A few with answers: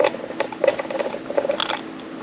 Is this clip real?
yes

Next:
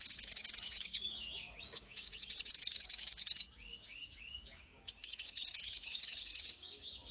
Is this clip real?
no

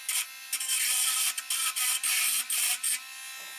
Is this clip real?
yes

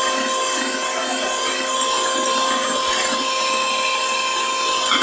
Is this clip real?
yes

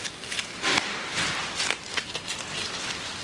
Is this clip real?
yes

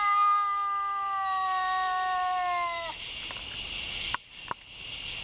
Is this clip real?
yes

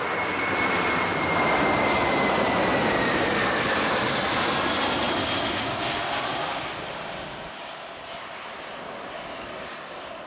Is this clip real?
yes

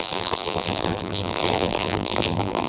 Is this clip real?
no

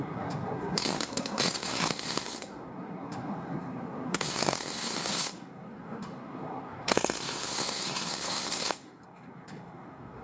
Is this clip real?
no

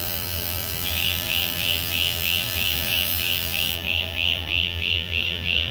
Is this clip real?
no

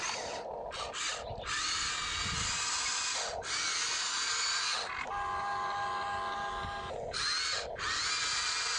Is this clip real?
yes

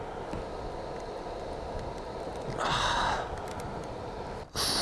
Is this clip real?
yes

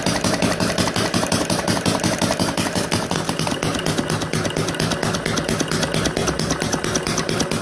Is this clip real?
yes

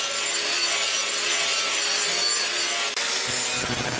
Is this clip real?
yes